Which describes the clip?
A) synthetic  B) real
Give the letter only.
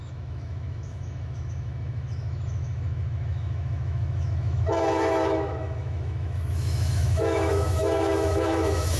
A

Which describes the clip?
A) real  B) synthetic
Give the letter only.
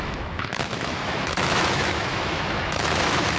B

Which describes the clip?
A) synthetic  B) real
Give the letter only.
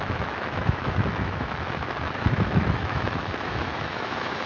A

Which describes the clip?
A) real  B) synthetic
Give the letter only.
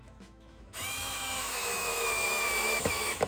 B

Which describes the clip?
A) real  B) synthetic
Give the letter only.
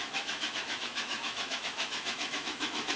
B